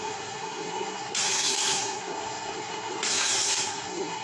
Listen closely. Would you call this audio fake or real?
fake